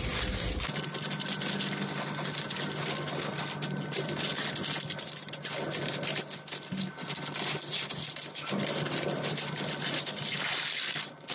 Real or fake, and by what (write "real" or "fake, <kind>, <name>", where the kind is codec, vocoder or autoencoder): real